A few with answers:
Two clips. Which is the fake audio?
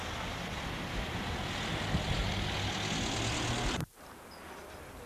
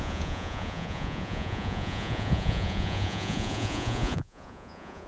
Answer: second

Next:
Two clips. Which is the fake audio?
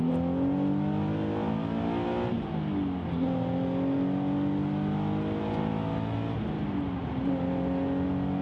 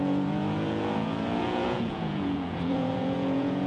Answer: second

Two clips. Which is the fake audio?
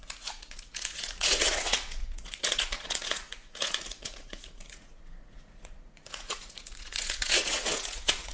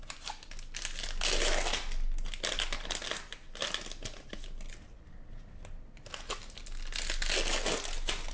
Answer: first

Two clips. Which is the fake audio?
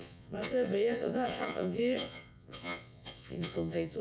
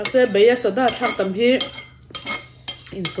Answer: first